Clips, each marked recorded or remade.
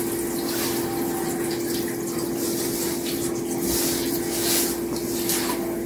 recorded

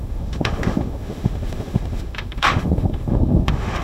remade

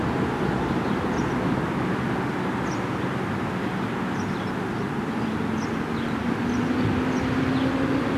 recorded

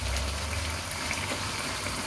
recorded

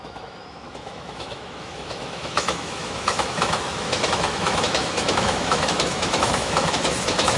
remade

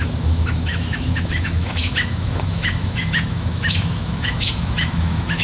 remade